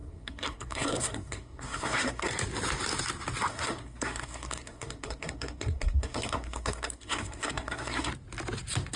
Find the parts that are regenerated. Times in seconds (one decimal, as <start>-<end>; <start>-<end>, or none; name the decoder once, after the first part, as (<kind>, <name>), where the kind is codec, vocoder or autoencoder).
0.0-2.3 (codec, SNAC); 3.5-8.1